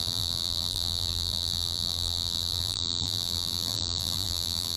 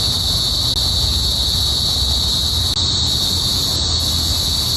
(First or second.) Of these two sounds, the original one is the second